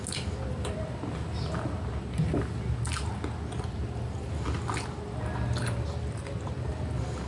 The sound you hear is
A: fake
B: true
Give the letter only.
B